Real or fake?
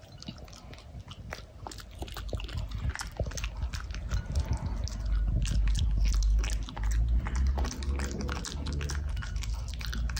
real